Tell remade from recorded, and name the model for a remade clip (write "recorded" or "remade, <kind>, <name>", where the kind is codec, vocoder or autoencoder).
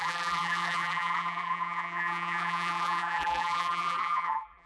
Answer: remade, vocoder, BigVGAN v2